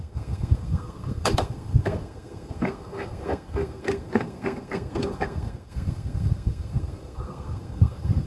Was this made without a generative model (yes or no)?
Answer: no